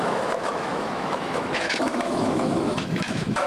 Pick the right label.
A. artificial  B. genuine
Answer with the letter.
A